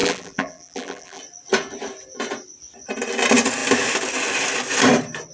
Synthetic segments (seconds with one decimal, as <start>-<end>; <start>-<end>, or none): 0.0-1.2